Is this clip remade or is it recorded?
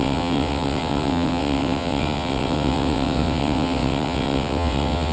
remade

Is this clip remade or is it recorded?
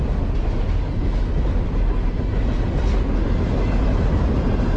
recorded